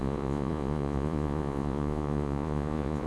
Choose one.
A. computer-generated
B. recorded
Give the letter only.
A